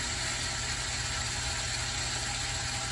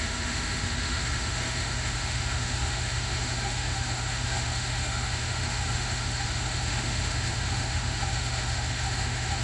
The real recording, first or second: first